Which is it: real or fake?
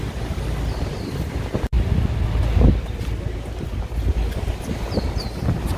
real